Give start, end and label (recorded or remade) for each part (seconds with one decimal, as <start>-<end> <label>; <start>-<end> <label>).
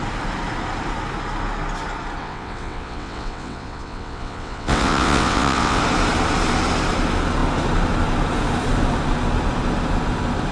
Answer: 0.0-2.2 recorded; 2.2-5.8 remade; 5.8-10.5 recorded